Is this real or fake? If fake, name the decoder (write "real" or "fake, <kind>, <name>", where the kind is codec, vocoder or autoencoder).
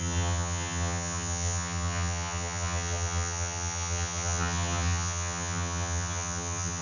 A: fake, vocoder, HiFi-GAN